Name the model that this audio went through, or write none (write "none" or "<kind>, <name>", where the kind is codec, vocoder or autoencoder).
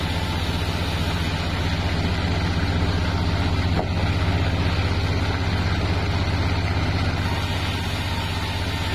none